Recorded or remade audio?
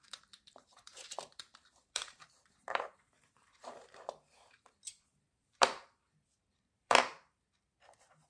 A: remade